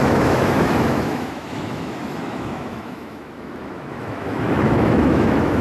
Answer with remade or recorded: remade